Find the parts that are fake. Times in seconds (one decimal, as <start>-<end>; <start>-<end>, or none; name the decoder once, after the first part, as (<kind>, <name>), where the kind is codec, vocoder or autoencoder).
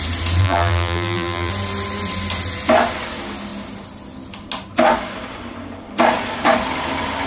0.4-1.5 (vocoder, BigVGAN v2)